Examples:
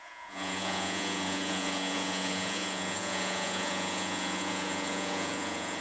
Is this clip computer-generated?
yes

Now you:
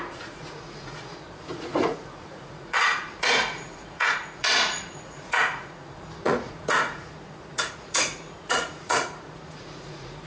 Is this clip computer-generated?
yes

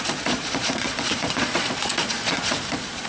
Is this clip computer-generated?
yes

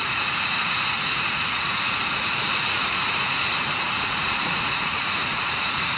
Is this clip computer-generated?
yes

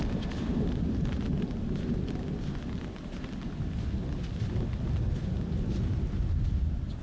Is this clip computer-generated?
no